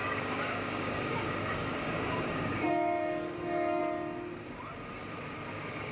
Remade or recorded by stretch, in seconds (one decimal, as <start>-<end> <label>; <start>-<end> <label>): 0.0-3.8 remade; 3.8-5.5 recorded; 5.5-5.9 remade